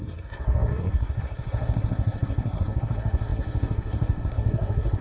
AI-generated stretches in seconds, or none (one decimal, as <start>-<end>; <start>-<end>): 0.0-5.0